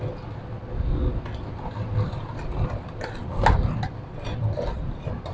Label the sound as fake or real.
real